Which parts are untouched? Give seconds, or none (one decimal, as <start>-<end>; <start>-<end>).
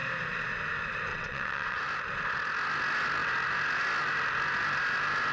0.0-1.1; 1.8-5.3